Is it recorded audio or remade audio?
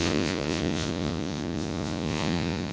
remade